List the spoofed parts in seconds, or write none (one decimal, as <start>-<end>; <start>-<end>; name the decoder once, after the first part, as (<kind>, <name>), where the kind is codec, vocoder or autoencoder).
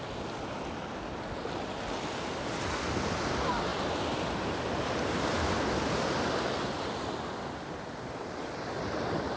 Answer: none